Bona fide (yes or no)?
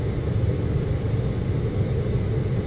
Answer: yes